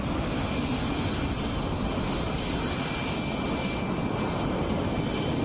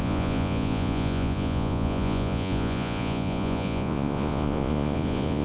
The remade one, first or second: second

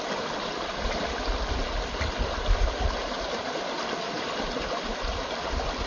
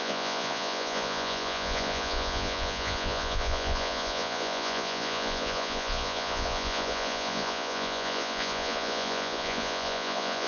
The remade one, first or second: second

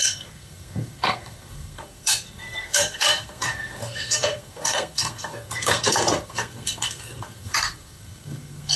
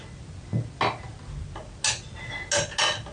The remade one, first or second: first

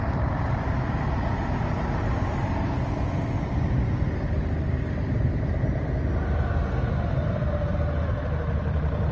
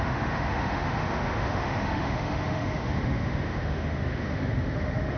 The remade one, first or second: second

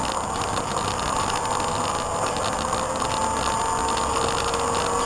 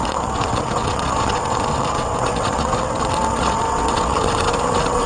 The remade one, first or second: second